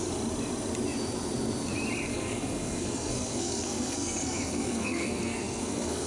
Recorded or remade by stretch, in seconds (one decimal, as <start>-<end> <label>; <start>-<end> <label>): 0.0-2.1 recorded; 2.1-6.1 remade